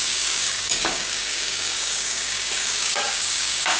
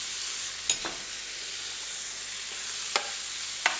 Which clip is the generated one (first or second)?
first